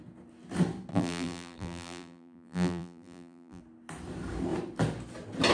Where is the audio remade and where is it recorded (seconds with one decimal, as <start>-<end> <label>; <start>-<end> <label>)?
0.0-0.9 recorded; 0.9-3.6 remade; 3.6-5.5 recorded